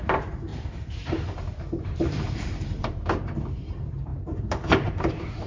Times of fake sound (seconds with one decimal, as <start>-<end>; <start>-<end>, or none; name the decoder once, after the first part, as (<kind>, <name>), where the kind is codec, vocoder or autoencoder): 0.5-3.2 (vocoder, BigVGAN v2)